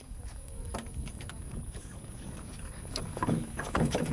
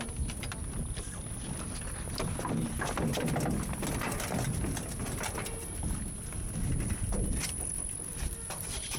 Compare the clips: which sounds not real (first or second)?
first